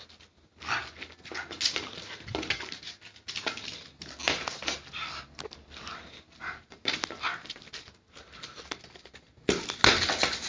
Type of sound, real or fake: real